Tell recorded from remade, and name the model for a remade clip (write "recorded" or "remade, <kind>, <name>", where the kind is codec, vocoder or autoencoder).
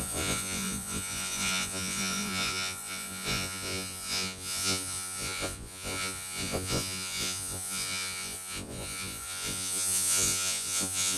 remade, vocoder, Vocos